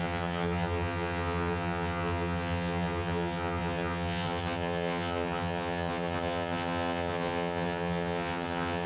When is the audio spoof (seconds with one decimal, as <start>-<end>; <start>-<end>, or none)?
0.0-8.9